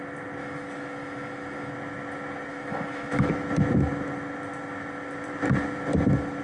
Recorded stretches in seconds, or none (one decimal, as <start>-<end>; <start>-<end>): 0.0-0.4; 1.7-2.5; 3.3-6.4